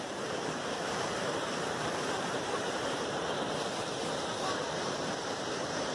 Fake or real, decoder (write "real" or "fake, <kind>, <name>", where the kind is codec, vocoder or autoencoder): fake, vocoder, BigVGAN v2